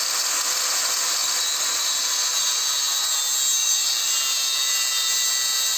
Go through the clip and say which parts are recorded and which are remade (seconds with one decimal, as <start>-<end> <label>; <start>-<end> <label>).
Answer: 0.0-3.6 recorded; 3.6-4.1 remade; 4.1-5.8 recorded

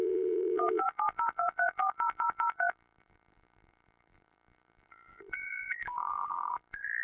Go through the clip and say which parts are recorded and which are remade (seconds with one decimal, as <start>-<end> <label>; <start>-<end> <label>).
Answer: 0.0-7.0 remade

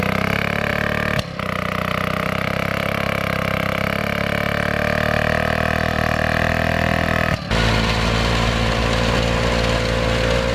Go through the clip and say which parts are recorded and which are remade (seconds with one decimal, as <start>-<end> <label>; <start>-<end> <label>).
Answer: 0.0-0.7 recorded; 0.7-4.0 remade; 4.0-10.5 recorded

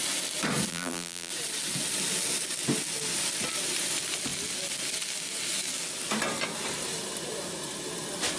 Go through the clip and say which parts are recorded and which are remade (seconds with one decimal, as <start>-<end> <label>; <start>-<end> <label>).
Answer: 0.0-0.7 recorded; 0.7-1.3 remade; 1.3-8.4 recorded

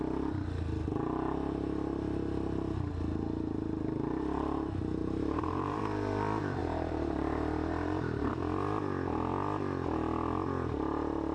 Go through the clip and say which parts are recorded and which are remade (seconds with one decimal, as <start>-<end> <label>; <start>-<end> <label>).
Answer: 0.0-5.0 recorded; 5.0-5.8 remade; 5.8-6.6 recorded; 6.6-8.3 remade; 8.3-11.3 recorded

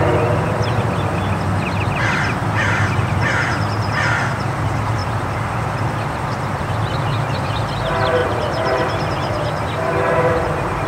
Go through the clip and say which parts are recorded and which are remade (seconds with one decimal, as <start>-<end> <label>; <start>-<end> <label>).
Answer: 0.0-2.4 recorded; 2.4-3.3 remade; 3.3-5.0 recorded; 5.0-7.5 remade; 7.5-8.2 recorded; 8.2-9.5 remade; 9.5-10.9 recorded